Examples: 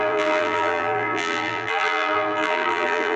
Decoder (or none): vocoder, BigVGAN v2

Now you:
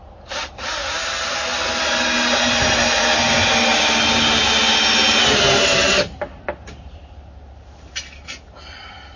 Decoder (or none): none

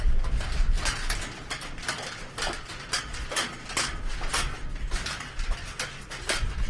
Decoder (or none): none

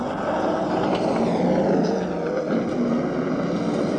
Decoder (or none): none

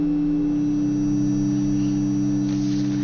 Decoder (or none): none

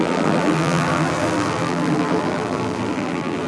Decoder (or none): vocoder, BigVGAN v2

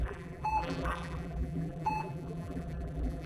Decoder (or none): vocoder, BigVGAN v2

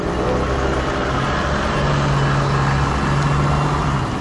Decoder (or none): none